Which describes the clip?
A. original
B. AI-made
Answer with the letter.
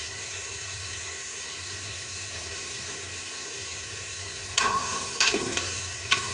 B